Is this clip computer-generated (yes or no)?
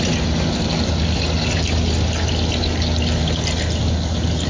no